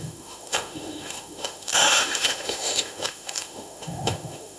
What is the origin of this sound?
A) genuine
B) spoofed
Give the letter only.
B